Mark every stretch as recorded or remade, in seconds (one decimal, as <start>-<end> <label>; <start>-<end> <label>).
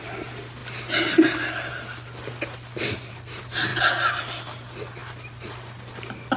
0.0-6.4 recorded